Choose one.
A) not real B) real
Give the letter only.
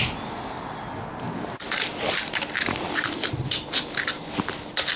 B